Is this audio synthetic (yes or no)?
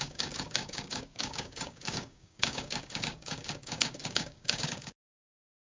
yes